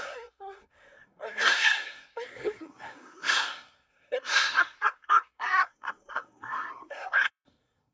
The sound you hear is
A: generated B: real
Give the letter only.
A